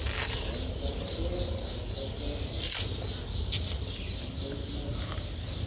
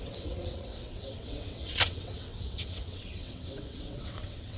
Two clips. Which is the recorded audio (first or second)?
first